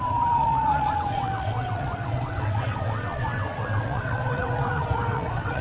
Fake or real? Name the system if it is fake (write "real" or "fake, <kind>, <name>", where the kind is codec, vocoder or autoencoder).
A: fake, vocoder, WaveNeXt